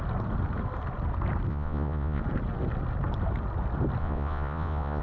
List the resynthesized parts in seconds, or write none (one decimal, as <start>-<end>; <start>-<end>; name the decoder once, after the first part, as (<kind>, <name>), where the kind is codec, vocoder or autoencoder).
1.5-2.2 (vocoder, Vocos); 4.0-5.0